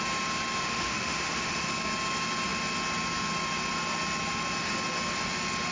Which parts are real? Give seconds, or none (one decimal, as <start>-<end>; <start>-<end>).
0.0-0.6; 1.7-5.7